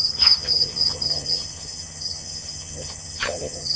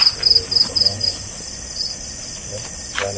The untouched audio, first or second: second